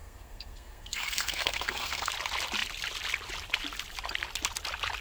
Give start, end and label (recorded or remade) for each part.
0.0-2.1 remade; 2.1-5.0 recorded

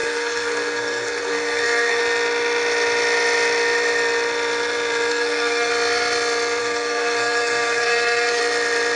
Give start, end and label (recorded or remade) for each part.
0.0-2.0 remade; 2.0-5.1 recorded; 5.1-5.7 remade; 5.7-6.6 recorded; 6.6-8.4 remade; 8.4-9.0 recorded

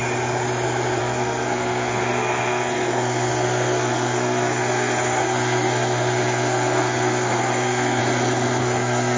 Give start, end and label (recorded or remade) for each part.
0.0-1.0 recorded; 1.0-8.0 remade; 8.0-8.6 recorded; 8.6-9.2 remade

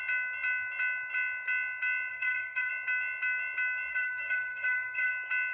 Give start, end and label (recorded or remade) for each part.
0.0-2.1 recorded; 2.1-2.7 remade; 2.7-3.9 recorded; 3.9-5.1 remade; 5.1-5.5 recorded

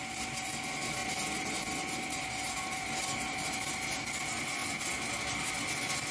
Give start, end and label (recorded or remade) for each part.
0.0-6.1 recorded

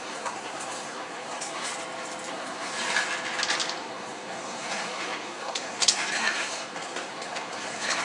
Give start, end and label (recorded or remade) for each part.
0.0-1.7 remade; 1.7-2.3 recorded; 2.3-2.7 remade; 2.7-3.8 recorded; 3.8-8.0 remade

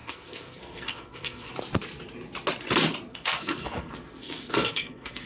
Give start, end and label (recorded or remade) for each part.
0.0-1.5 remade; 1.5-3.1 recorded; 3.1-5.3 remade